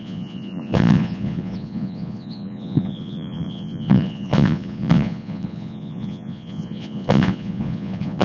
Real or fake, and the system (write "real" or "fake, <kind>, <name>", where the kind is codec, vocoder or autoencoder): fake, vocoder, Vocos